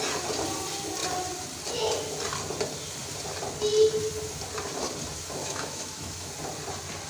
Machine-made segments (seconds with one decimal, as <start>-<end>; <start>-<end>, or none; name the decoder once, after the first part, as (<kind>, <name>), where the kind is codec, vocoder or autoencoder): 5.4-6.3 (autoencoder, DAC-VAE)